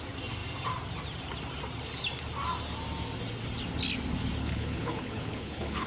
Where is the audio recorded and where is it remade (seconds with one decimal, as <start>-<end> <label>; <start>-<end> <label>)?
0.0-4.4 recorded; 4.4-5.9 remade